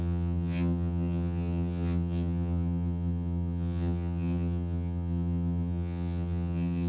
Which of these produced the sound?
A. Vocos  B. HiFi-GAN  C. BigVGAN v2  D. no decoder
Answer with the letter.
B